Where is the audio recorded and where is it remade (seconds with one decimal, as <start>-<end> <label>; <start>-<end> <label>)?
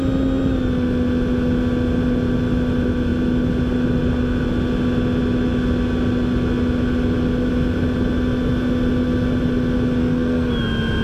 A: 0.0-10.0 recorded; 10.0-10.5 remade; 10.5-11.0 recorded